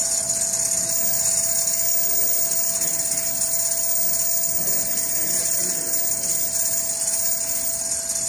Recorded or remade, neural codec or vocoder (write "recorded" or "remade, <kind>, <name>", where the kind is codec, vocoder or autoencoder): recorded